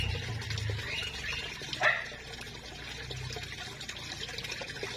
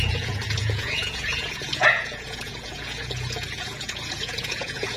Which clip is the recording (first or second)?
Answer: first